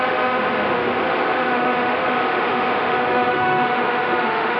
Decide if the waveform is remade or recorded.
remade